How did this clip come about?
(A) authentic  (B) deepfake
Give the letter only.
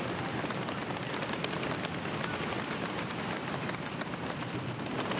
A